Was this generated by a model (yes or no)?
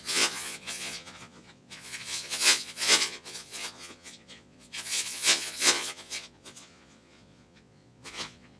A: yes